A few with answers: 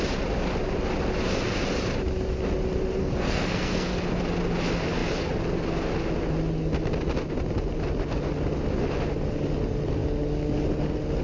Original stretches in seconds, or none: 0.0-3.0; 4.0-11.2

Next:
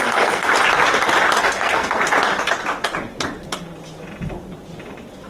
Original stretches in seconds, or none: 0.5-1.4; 2.0-5.3

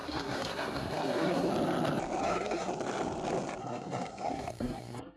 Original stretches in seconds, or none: 1.5-2.2; 2.7-3.6

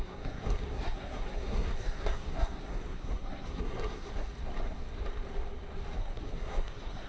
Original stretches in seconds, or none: 4.1-6.0

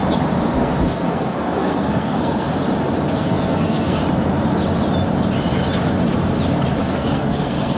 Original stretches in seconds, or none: 0.0-0.5; 2.5-3.1; 4.0-6.8

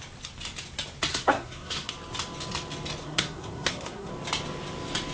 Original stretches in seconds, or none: 0.0-1.1; 1.9-3.0; 4.1-5.1

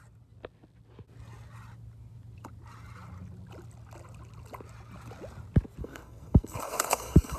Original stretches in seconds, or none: 0.0-5.8